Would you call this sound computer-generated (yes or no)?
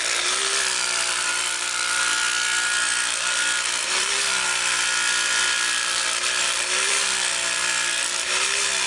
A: yes